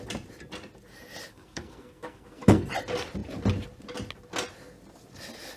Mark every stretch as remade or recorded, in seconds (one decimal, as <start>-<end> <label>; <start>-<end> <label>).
0.0-1.3 recorded; 1.3-2.7 remade; 2.7-5.6 recorded